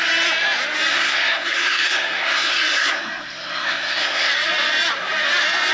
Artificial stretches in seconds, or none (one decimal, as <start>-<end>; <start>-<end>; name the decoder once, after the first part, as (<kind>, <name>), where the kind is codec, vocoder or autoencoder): 0.9-4.3 (codec, SNAC)